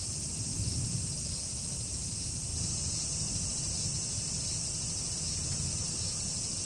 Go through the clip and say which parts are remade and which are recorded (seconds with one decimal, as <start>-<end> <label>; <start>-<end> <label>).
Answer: 0.0-2.5 remade; 2.5-5.7 recorded; 5.7-6.6 remade

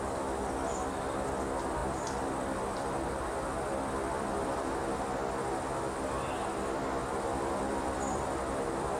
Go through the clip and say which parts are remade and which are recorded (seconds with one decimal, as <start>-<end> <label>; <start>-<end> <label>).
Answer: 0.0-4.8 remade; 4.8-7.6 recorded; 7.6-9.0 remade

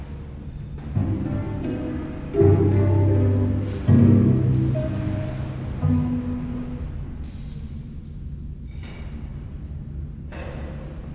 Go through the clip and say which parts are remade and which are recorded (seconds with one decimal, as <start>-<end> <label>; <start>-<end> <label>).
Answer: 0.0-9.3 recorded; 9.3-10.7 remade; 10.7-11.1 recorded

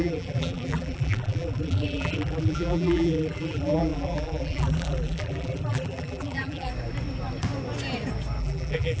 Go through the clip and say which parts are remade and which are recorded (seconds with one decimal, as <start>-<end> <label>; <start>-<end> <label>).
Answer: 0.0-6.7 remade; 6.7-8.4 recorded; 8.4-9.0 remade

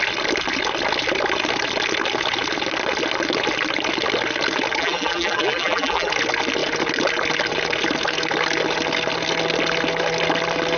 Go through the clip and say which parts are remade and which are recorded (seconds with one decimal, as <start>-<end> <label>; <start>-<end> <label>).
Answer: 0.0-4.8 recorded; 4.8-6.1 remade; 6.1-10.8 recorded